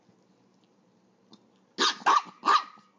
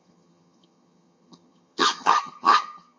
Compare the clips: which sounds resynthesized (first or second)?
second